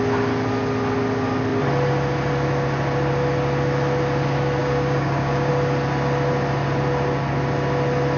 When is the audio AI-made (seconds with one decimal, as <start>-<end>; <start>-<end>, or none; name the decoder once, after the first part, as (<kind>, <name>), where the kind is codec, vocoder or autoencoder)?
4.6-5.5 (codec, DAC)